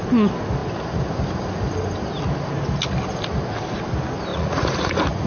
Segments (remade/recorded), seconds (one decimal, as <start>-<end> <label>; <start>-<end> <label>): 0.0-4.3 recorded; 4.3-5.3 remade